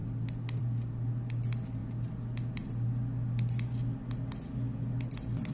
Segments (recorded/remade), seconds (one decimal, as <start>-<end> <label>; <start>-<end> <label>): 0.0-5.5 recorded